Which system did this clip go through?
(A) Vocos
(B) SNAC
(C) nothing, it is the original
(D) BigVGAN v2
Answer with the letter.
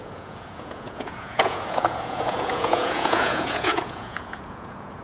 A